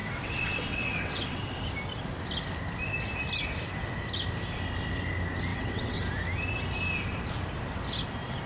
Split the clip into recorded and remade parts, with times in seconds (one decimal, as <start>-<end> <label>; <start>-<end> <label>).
0.0-1.7 remade; 1.7-5.5 recorded; 5.5-6.0 remade; 6.0-8.5 recorded